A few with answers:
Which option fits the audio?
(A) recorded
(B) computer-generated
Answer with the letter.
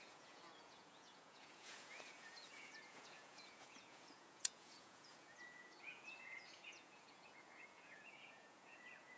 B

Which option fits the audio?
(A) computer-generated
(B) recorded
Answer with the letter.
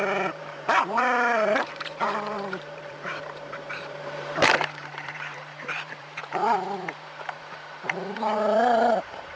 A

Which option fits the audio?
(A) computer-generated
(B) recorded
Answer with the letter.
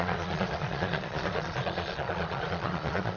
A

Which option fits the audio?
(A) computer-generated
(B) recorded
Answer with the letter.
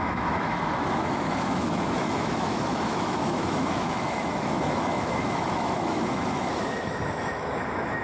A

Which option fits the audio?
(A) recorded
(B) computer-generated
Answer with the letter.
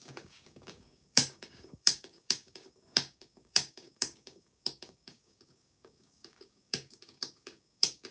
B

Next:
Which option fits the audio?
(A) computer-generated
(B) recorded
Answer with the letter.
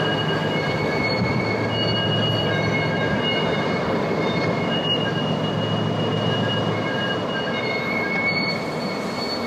B